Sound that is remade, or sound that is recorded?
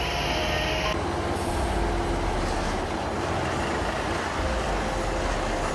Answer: recorded